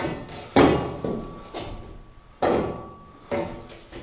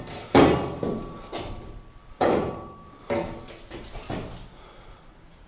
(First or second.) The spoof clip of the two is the second